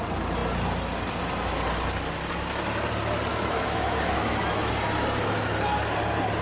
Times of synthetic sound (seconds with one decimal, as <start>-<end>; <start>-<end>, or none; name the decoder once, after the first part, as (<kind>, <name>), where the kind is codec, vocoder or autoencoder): 3.3-4.7 (autoencoder, DAC-VAE)